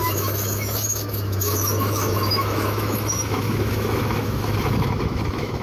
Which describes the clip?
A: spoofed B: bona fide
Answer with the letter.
A